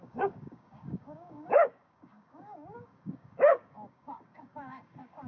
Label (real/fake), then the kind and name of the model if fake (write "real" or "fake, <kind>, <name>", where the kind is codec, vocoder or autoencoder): fake, codec, DAC